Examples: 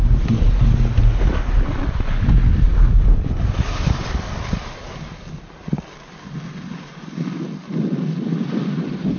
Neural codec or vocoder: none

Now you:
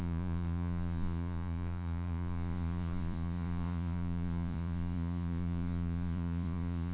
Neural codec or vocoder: vocoder, Vocos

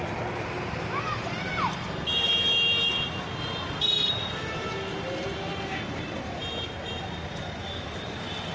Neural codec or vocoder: none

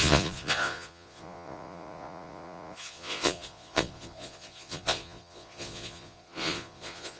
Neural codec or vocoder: vocoder, Vocos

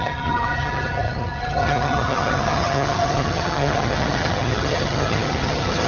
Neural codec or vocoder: vocoder, HiFi-GAN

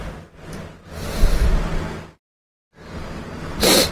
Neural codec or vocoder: none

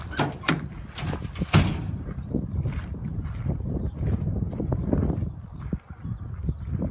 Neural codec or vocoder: none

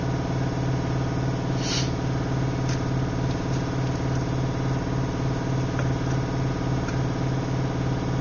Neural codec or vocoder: none